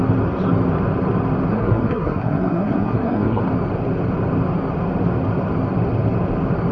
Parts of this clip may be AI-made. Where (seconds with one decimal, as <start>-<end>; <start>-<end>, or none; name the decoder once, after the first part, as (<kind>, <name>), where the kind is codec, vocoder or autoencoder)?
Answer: 1.5-3.4 (codec, SNAC)